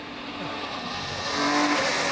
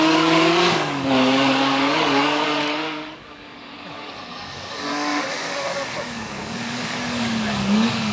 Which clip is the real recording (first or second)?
first